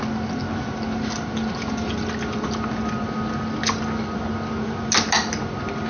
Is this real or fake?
real